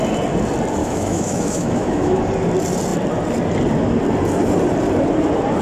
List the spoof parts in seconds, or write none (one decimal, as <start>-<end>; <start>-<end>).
0.8-2.2